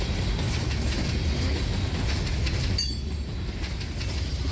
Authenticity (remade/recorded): recorded